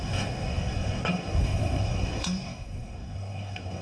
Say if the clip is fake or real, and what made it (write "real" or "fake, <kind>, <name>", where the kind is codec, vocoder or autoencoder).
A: fake, codec, SNAC